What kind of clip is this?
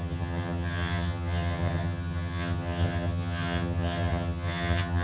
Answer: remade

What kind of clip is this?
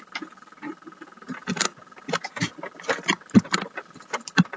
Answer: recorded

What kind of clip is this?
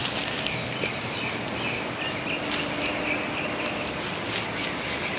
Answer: recorded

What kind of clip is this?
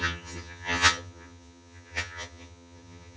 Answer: remade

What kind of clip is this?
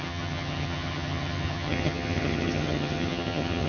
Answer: remade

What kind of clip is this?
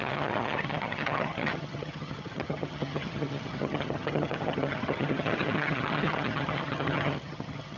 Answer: remade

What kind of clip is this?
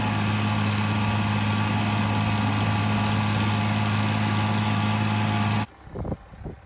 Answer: recorded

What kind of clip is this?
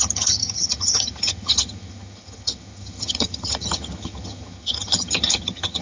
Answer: remade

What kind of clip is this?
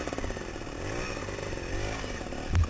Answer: recorded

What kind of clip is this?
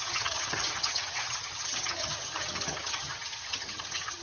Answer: remade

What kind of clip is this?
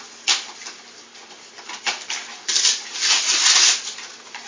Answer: recorded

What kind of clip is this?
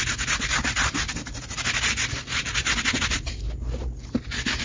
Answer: recorded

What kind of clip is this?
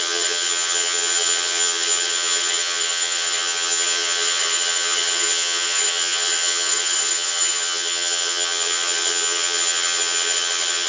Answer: remade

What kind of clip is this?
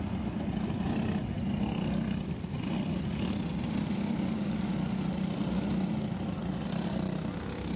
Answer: recorded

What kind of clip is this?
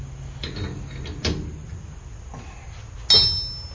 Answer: recorded